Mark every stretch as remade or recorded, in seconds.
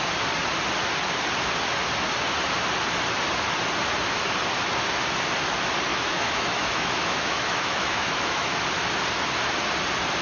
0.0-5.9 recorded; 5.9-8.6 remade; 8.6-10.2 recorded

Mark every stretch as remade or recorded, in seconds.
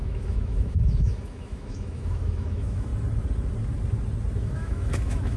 0.0-2.9 remade; 2.9-4.4 recorded; 4.4-5.4 remade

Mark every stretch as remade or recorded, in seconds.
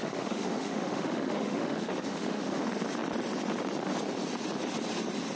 0.0-2.6 remade; 2.6-5.4 recorded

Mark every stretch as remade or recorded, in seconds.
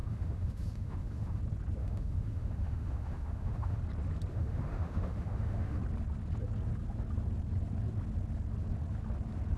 0.0-1.4 remade; 1.4-1.8 recorded; 1.8-3.8 remade; 3.8-4.3 recorded; 4.3-5.8 remade; 5.8-9.6 recorded